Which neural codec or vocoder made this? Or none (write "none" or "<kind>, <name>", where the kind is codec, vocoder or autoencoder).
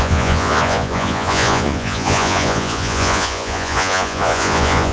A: vocoder, Vocos